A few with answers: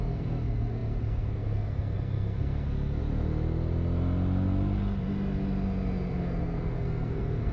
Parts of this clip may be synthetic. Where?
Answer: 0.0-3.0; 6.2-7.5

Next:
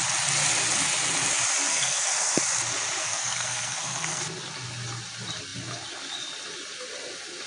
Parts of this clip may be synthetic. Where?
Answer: 1.7-2.4; 3.0-4.2

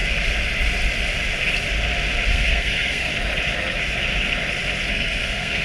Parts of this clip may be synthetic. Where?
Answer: 2.3-3.1; 4.9-5.6

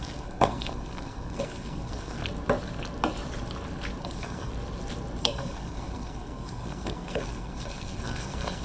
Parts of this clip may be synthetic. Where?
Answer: 0.0-2.2; 4.0-4.5; 5.2-8.6

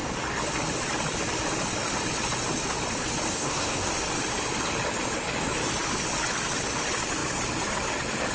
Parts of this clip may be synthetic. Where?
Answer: 3.3-3.9

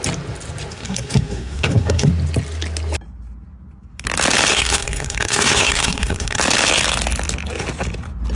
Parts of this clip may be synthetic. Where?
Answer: 0.7-2.1; 4.5-6.4

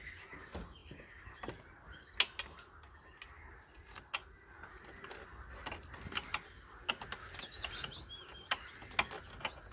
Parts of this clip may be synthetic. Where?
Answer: none